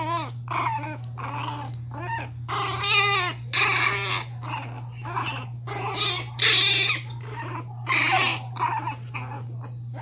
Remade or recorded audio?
recorded